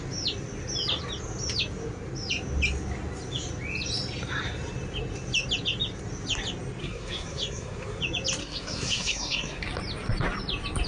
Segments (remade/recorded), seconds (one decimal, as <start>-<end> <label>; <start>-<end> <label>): 0.0-6.8 recorded; 6.8-8.0 remade; 8.0-8.4 recorded; 8.4-9.6 remade; 9.6-10.9 recorded